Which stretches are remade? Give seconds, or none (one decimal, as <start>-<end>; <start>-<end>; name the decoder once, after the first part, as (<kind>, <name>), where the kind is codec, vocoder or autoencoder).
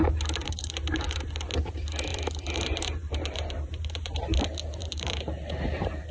0.4-1.3 (vocoder, BigVGAN v2); 2.1-4.2; 4.8-5.6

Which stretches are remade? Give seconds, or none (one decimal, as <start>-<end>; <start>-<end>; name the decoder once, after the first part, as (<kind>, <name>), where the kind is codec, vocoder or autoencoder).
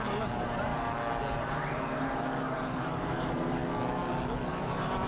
0.0-0.7 (vocoder, BigVGAN v2); 1.4-3.6; 4.5-5.1